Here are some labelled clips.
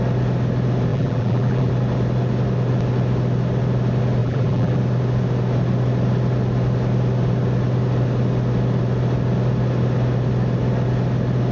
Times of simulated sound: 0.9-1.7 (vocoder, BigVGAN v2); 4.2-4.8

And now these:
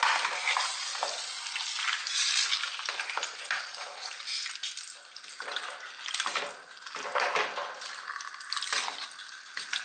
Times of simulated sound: 0.9-1.4 (vocoder, BigVGAN v2)

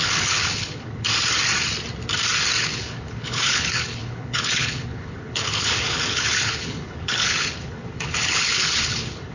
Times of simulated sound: 0.0-1.1 (codec, HILCodec); 2.6-9.3

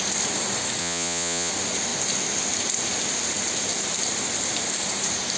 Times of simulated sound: 0.8-1.5 (vocoder, Vocos)

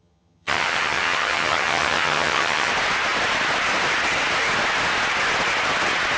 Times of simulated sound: 0.0-2.7 (vocoder, HiFi-GAN)